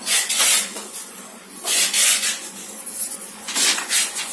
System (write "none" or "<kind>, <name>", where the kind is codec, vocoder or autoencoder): vocoder, Vocos